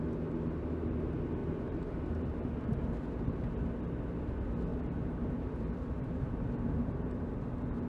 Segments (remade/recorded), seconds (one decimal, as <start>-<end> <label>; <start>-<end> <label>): 0.0-1.4 recorded; 1.4-2.9 remade; 2.9-4.7 recorded; 4.7-7.3 remade; 7.3-7.9 recorded